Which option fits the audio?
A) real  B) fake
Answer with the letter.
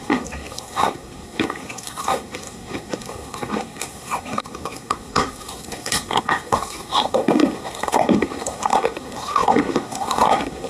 B